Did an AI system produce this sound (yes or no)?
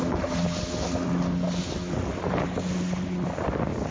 no